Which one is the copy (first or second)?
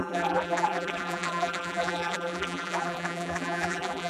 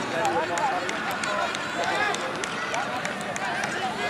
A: first